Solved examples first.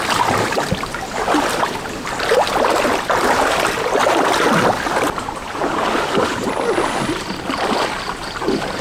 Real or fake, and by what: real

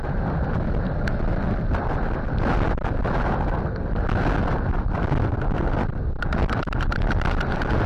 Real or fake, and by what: real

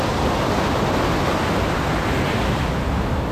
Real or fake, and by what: real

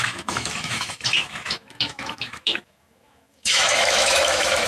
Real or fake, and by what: fake, autoencoder, DAC-VAE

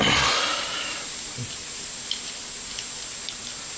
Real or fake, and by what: real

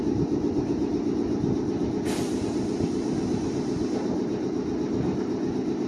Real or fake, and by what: real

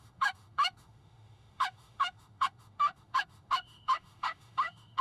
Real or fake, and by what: fake, autoencoder, DAC-VAE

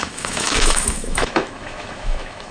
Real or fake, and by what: fake, autoencoder, DAC-VAE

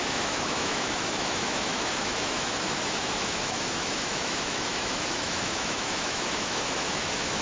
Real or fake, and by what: fake, autoencoder, DAC-VAE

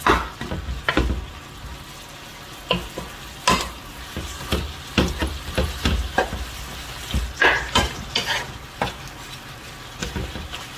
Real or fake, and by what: real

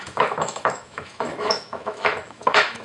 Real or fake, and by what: fake, autoencoder, DAC-VAE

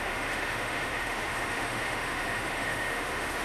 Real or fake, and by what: fake, autoencoder, DAC-VAE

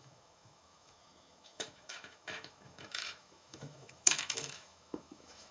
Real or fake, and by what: fake, autoencoder, DAC-VAE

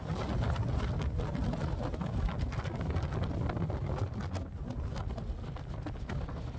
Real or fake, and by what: real